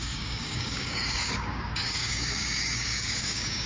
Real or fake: fake